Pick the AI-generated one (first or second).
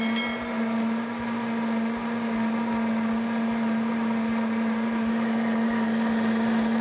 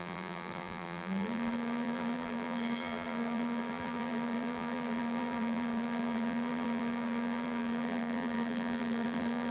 second